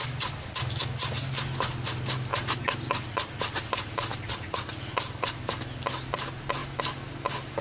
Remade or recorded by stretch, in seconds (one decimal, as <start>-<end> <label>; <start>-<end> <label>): 0.0-2.3 recorded; 2.3-5.5 remade; 5.5-7.6 recorded